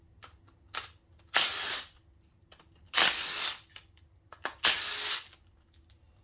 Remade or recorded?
recorded